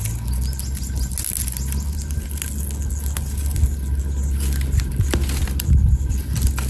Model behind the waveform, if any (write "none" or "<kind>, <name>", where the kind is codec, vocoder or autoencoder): none